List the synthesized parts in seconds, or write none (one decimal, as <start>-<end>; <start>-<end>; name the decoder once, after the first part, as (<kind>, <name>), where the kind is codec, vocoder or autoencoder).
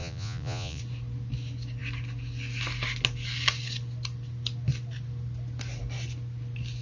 0.0-0.8 (vocoder, Vocos)